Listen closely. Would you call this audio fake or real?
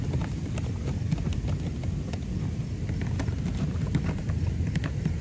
real